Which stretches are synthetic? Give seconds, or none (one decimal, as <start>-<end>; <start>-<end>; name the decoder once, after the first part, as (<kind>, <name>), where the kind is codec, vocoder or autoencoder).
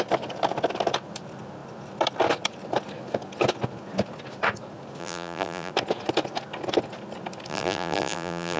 5.0-5.7 (vocoder, BigVGAN v2); 7.5-8.6